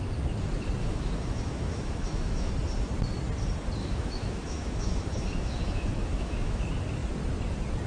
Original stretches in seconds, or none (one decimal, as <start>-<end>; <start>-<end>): 0.0-0.8; 2.5-3.8; 6.6-7.9